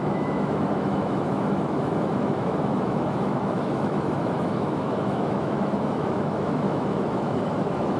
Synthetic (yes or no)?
yes